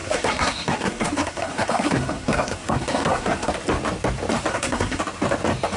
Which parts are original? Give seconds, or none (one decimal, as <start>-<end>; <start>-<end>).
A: 3.5-4.5; 5.0-5.8

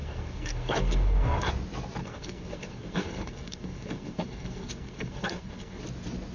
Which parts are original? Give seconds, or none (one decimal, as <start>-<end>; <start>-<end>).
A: 1.5-2.0; 5.8-6.3

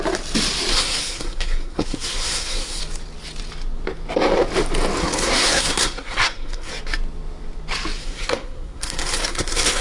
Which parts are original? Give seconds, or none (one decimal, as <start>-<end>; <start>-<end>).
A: 0.0-0.7; 2.8-5.0; 6.7-8.0

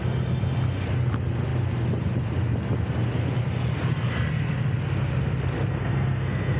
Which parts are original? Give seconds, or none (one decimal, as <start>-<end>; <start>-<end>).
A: 0.0-5.7